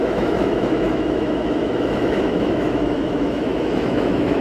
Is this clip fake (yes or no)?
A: yes